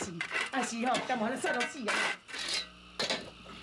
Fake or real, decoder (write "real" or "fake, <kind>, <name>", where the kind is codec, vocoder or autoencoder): real